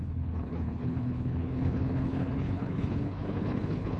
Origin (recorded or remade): remade